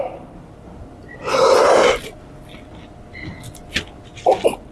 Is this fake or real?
real